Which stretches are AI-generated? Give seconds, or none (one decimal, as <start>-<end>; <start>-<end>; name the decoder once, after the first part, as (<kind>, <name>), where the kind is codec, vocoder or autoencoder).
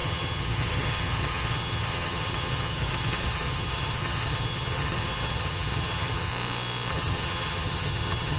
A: 0.0-6.3 (vocoder, HiFi-GAN); 6.9-8.4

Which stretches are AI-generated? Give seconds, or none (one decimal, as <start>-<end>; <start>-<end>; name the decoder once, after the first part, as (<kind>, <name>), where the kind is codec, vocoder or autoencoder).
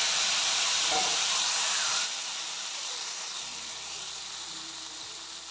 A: 0.0-5.5 (vocoder, BigVGAN v2)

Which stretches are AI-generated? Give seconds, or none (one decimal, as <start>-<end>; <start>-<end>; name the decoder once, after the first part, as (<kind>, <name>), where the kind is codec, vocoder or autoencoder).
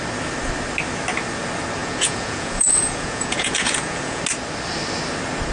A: 1.8-4.2 (vocoder, Vocos)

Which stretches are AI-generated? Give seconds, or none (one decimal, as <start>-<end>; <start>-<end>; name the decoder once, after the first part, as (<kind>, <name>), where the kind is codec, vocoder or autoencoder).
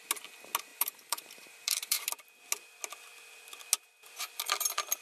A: 0.7-2.0 (vocoder, BigVGAN v2)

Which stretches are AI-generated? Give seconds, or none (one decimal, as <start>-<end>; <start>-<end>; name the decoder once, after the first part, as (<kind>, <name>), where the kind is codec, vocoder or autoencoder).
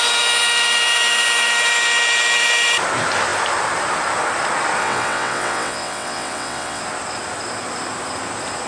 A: 4.8-6.8 (vocoder, WaveNeXt)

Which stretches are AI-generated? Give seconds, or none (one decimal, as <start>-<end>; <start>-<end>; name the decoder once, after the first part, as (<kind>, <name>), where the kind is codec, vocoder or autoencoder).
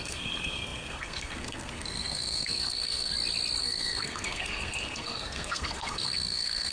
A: 0.0-3.1 (codec, SNAC); 3.6-6.7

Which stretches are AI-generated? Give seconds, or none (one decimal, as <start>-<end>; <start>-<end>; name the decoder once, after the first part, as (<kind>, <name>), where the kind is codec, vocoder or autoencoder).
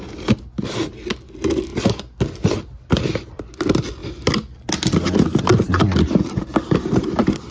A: none